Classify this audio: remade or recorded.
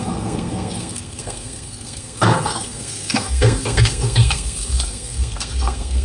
remade